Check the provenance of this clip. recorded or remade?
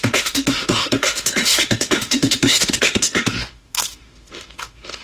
remade